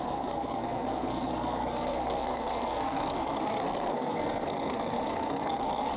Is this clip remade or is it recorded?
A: remade